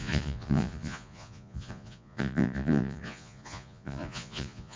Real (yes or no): no